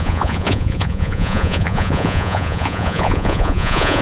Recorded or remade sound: remade